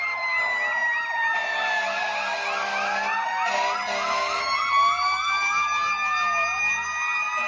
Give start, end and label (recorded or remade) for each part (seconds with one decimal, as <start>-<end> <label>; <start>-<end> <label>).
0.0-7.5 recorded